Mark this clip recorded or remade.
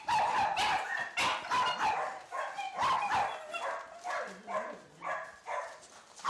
recorded